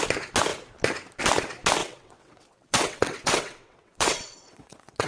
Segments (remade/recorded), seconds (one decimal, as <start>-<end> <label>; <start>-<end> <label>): 0.0-1.8 recorded; 1.8-5.1 remade